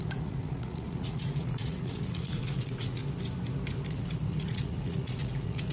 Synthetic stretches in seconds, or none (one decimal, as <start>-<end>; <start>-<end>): 0.0-3.0; 3.9-5.7